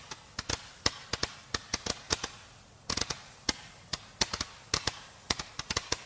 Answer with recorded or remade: recorded